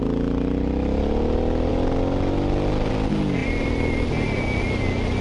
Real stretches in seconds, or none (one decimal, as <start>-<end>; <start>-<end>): 0.0-5.2